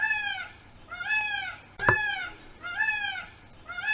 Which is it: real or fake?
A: real